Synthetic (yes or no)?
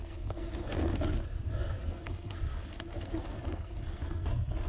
yes